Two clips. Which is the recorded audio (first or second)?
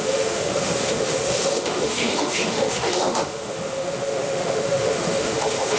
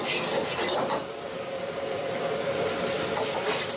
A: second